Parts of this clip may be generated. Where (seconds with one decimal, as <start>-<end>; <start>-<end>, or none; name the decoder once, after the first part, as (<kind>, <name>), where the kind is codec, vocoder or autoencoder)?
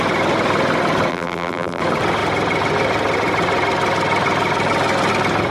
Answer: 1.1-1.8 (vocoder, BigVGAN v2)